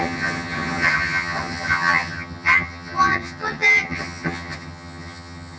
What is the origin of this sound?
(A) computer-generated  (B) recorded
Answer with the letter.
A